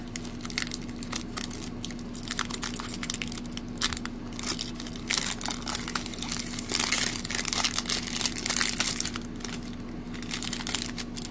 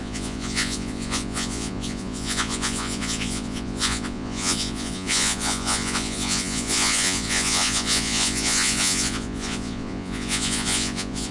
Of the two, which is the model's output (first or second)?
second